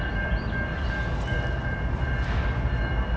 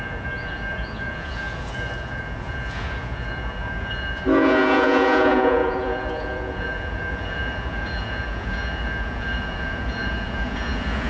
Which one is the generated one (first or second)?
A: second